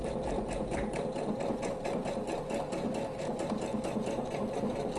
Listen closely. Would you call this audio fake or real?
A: real